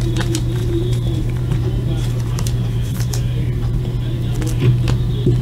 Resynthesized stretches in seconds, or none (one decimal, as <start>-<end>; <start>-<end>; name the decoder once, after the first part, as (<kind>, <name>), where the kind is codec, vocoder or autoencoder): 0.6-3.8 (vocoder, BigVGAN v2)

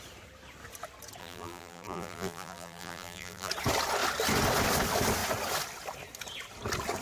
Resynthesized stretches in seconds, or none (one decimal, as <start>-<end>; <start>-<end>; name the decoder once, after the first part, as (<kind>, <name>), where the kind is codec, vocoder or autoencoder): 1.2-3.5 (vocoder, BigVGAN v2)

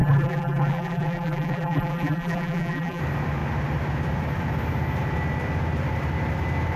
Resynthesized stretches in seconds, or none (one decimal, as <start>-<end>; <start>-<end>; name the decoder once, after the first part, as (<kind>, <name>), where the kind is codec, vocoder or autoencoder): 0.0-3.0 (vocoder, BigVGAN v2)